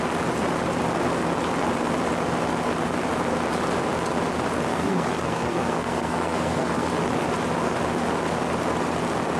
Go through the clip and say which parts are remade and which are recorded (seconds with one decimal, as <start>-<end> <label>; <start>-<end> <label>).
0.0-4.7 recorded; 4.7-6.9 remade; 6.9-9.4 recorded